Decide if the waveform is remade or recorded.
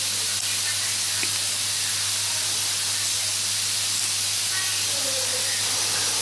recorded